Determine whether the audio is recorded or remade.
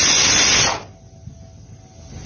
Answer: recorded